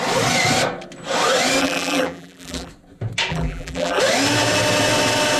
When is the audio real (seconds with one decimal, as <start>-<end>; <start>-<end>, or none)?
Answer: 0.0-1.6; 2.7-3.3; 4.0-5.4